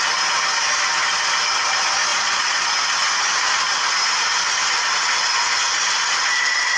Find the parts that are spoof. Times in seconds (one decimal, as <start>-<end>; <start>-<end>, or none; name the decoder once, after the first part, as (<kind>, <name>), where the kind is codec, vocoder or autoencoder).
2.1-2.7 (vocoder, Vocos)